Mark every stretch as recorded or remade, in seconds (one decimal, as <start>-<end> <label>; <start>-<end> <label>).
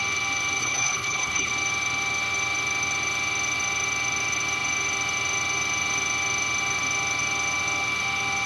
0.0-0.6 recorded; 0.6-1.5 remade; 1.5-8.5 recorded